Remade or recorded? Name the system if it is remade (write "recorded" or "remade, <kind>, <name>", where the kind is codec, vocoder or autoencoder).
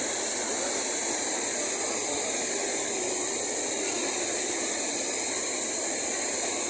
recorded